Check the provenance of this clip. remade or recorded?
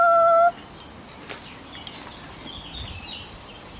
recorded